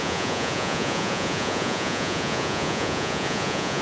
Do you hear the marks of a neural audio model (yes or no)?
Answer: yes